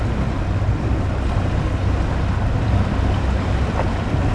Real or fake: real